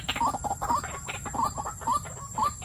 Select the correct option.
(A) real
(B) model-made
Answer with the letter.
A